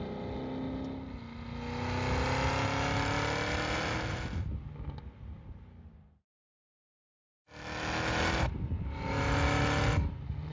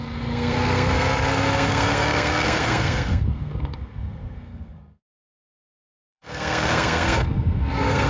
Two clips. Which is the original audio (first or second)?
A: first